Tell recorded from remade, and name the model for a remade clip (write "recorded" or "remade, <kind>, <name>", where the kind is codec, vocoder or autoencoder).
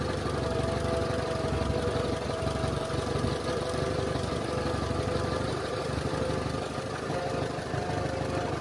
recorded